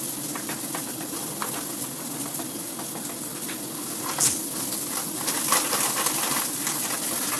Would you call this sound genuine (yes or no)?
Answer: yes